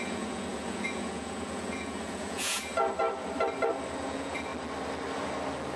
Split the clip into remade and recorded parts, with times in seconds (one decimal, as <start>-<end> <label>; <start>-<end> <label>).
0.0-2.7 remade; 2.7-4.0 recorded; 4.0-4.5 remade; 4.5-5.8 recorded